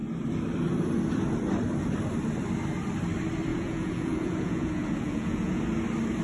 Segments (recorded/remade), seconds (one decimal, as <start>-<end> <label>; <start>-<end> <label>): 0.0-3.5 recorded; 3.5-5.6 remade; 5.6-6.2 recorded